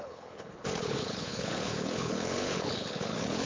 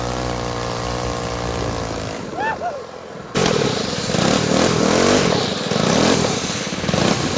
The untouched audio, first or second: second